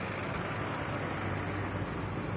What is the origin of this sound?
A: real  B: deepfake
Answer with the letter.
A